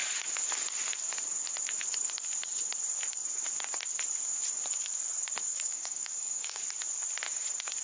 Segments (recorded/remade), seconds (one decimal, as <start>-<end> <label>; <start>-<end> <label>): 0.0-5.5 recorded; 5.5-6.6 remade; 6.6-7.8 recorded